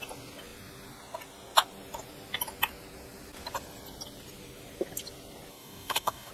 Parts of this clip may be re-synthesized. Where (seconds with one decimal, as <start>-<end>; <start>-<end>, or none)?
5.5-6.3